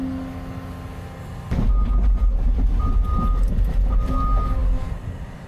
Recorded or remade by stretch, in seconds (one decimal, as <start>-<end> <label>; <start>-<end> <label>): 0.0-4.6 recorded; 4.6-5.5 remade